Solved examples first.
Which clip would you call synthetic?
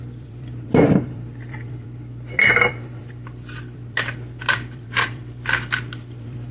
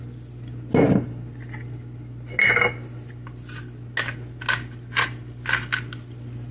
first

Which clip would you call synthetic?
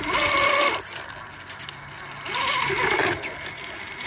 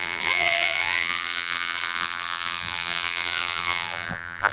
second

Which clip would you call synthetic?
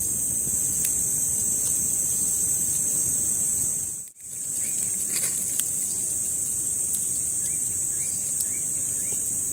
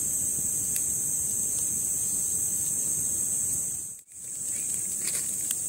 first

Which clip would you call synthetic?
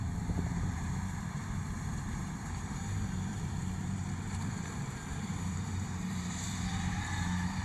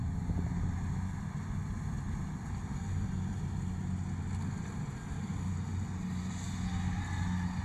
first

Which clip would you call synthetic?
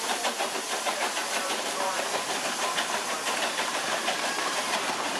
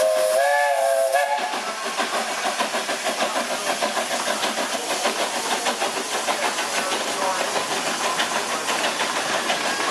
first